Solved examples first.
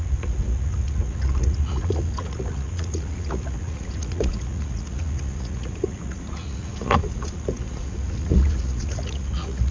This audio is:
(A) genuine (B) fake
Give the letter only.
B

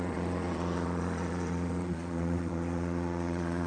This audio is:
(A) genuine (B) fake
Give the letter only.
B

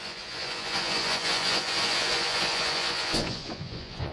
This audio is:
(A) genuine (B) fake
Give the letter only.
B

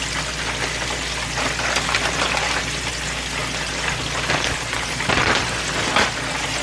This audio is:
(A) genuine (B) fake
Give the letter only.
A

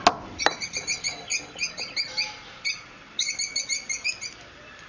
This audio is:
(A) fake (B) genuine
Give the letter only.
B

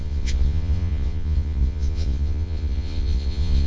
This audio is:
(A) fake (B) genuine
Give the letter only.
A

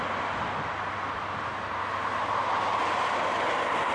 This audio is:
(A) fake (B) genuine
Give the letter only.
B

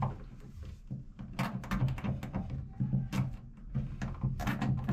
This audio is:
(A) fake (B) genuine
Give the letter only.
B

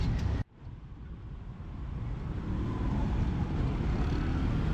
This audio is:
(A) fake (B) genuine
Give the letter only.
B